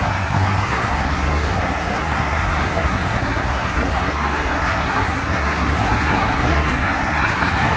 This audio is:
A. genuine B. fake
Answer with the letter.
B